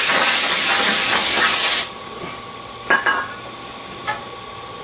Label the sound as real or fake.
fake